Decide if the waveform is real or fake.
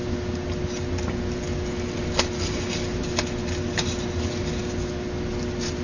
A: real